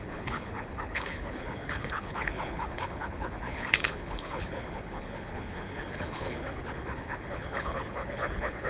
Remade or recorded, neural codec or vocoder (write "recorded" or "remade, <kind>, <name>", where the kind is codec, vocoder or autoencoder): remade, codec, HILCodec